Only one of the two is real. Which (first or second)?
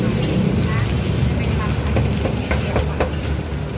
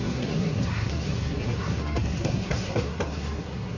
first